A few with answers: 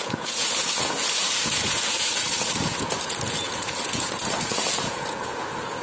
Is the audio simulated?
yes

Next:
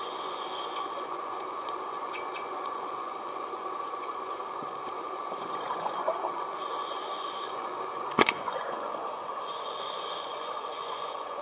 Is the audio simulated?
yes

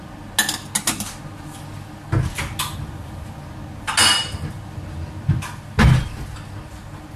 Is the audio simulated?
no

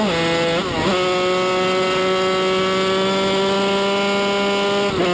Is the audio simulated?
no